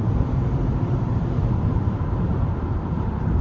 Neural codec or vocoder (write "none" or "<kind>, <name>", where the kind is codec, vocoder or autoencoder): vocoder, BigVGAN v2